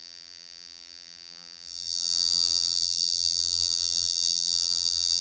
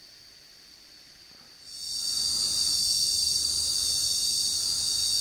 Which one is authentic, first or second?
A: second